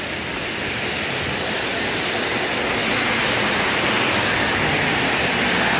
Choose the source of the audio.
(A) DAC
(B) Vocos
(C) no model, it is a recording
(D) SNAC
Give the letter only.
C